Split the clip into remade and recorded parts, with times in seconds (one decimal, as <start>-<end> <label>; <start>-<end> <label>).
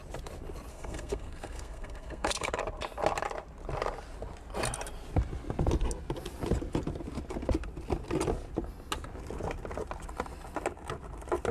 0.0-0.7 recorded; 0.7-2.6 remade; 2.6-11.5 recorded